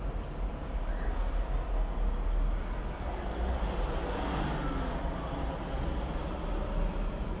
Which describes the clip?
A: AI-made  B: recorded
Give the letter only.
B